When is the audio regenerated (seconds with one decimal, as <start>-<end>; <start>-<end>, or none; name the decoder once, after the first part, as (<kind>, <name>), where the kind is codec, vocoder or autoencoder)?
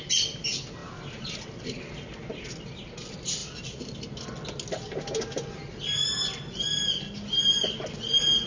3.4-4.0 (vocoder, BigVGAN v2)